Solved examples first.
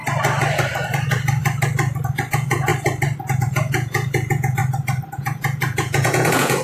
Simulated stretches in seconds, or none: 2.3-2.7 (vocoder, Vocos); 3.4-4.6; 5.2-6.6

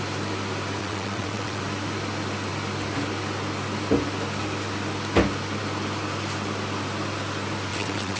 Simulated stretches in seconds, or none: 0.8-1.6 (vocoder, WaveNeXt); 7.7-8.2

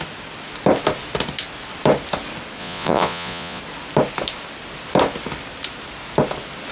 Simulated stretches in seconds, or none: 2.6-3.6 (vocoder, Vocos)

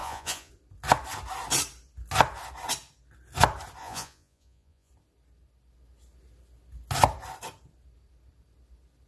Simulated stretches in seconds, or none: 0.0-0.5 (vocoder, Vocos); 3.8-4.9

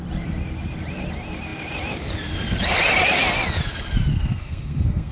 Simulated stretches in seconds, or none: 4.1-5.1 (codec, SNAC)

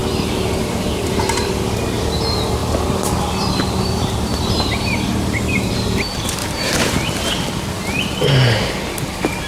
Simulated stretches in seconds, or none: 0.0-1.5 (vocoder, BigVGAN v2); 2.6-5.7; 6.4-7.1

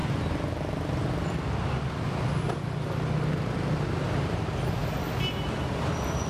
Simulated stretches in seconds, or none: none

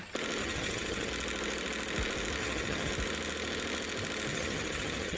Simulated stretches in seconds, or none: 0.4-1.1 (vocoder, HiFi-GAN); 2.4-2.9; 4.3-5.2